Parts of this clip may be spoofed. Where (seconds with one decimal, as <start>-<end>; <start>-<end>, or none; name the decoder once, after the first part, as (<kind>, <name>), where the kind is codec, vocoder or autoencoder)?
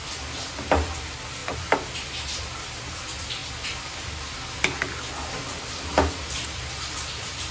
none